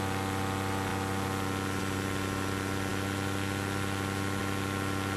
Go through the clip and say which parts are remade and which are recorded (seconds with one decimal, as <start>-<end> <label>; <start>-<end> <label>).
0.0-5.2 recorded